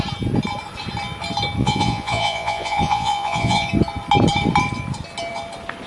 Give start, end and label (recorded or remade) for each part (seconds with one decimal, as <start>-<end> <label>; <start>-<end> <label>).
0.0-1.6 recorded; 1.6-3.7 remade; 3.7-5.9 recorded